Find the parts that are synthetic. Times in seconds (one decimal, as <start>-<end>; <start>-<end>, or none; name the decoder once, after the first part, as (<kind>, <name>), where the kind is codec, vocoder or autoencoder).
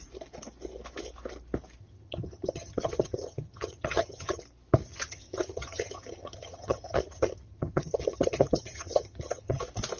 1.8-4.4 (vocoder, HiFi-GAN); 4.9-9.6